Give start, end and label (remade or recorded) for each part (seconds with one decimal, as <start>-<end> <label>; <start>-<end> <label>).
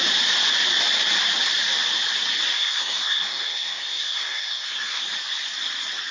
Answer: 0.0-2.5 recorded; 2.5-5.0 remade; 5.0-6.1 recorded